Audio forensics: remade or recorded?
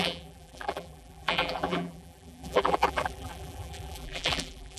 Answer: remade